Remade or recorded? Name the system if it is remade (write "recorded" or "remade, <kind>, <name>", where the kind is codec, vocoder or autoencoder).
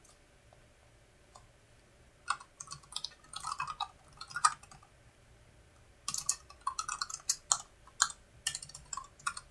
recorded